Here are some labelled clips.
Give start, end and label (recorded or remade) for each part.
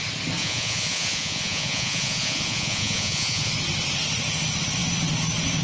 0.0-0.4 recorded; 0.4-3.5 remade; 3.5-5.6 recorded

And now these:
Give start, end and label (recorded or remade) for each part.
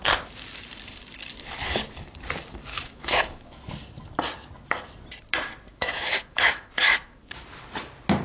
0.0-2.7 recorded; 2.7-3.7 remade; 3.7-5.7 recorded; 5.7-7.2 remade; 7.2-8.2 recorded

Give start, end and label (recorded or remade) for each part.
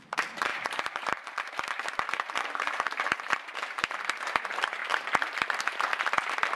0.0-4.8 remade; 4.8-6.6 recorded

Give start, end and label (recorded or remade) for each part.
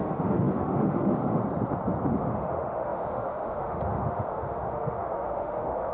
0.0-1.4 remade; 1.4-2.1 recorded; 2.1-5.9 remade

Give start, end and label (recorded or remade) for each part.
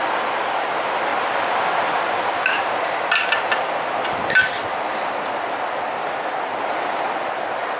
0.0-7.8 recorded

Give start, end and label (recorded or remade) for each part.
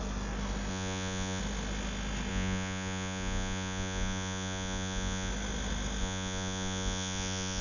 0.0-0.7 recorded; 0.7-1.4 remade; 1.4-2.3 recorded; 2.3-5.3 remade; 5.3-6.0 recorded; 6.0-7.6 remade